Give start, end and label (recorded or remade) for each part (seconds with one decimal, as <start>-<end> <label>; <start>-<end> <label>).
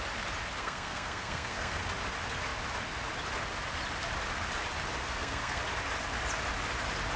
0.0-0.6 recorded; 0.6-1.8 remade; 1.8-5.0 recorded; 5.0-5.6 remade; 5.6-7.2 recorded